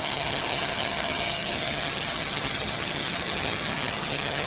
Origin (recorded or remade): remade